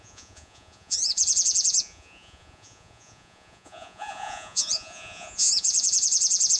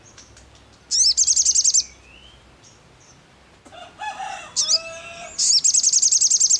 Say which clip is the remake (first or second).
first